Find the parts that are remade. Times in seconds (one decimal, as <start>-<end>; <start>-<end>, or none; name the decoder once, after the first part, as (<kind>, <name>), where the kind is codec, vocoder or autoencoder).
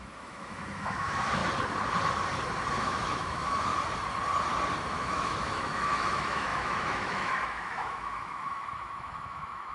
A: 0.0-1.4 (autoencoder, DAC-VAE); 2.7-3.7; 4.8-9.7